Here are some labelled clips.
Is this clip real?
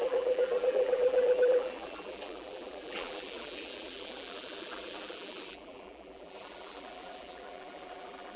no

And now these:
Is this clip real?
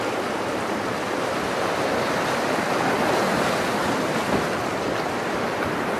yes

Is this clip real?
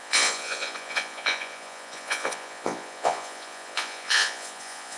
no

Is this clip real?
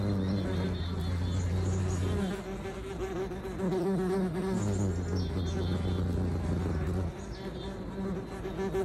yes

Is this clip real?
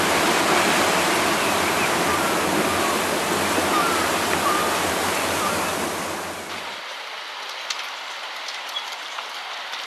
yes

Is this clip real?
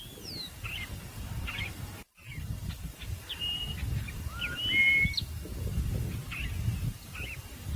yes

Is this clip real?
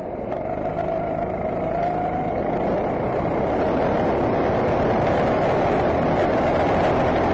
yes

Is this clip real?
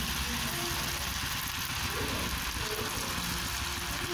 yes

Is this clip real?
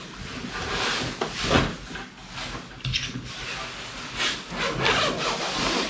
yes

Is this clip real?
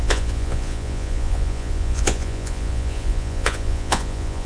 no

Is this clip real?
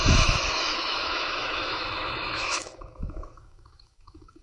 no